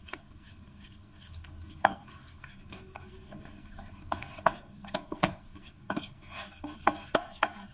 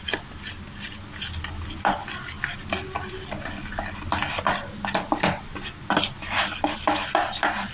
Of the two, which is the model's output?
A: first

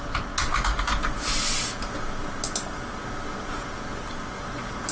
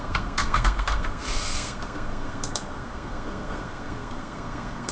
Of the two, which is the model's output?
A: second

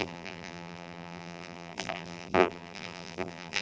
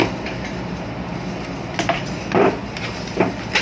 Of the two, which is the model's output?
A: first